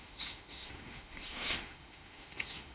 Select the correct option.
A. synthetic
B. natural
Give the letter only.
A